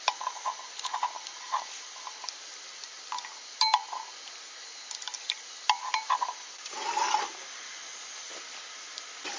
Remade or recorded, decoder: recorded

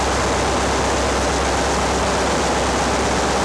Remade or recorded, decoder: recorded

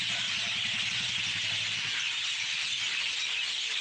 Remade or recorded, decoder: recorded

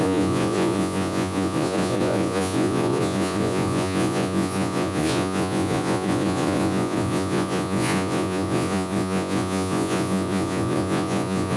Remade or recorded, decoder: remade, vocoder, Vocos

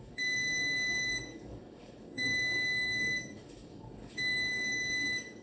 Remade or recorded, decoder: remade, codec, DAC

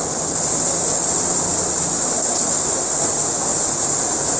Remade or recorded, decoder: recorded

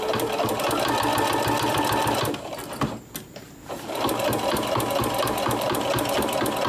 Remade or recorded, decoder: recorded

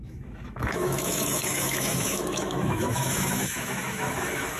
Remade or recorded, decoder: remade, autoencoder, DAC-VAE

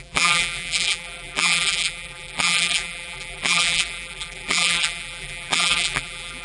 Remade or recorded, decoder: remade, vocoder, BigVGAN v2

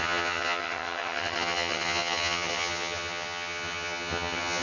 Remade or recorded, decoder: remade, vocoder, HiFi-GAN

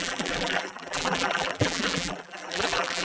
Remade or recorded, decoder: remade, vocoder, BigVGAN v2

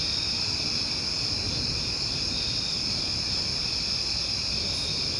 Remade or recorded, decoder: recorded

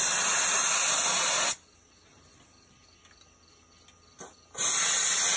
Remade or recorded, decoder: recorded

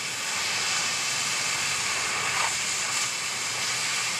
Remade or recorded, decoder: recorded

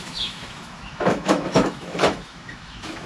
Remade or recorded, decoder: remade, autoencoder, DAC-VAE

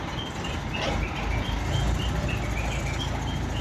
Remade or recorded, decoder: recorded